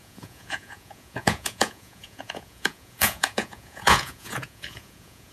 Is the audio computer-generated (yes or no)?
yes